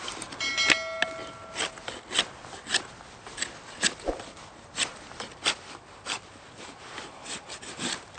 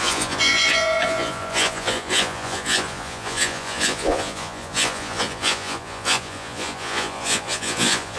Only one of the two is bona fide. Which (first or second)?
first